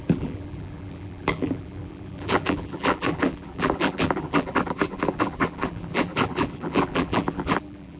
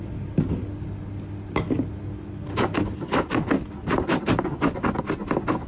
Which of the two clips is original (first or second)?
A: second